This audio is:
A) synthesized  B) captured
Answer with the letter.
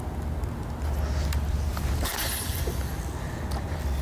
B